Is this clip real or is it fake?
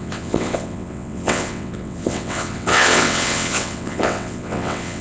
fake